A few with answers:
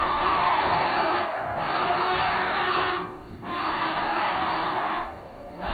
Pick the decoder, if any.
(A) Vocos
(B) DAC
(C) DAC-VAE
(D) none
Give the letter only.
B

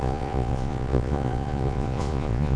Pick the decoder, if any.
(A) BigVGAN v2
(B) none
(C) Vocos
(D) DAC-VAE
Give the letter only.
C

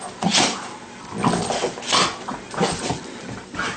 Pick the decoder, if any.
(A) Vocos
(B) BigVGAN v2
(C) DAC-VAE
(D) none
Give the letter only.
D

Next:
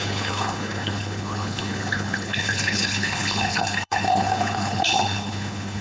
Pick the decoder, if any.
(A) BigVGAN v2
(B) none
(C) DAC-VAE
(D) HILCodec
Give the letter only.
D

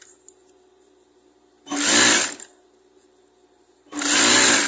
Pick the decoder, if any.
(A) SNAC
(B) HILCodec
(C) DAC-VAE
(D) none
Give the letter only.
D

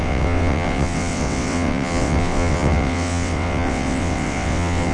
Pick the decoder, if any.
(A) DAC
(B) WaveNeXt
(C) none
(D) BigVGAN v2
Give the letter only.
B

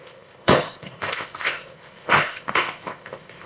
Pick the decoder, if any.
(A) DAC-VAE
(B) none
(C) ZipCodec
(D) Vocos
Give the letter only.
C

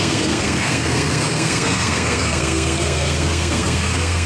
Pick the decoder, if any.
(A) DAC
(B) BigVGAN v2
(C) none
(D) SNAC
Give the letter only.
D